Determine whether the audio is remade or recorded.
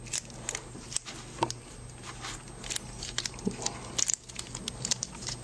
recorded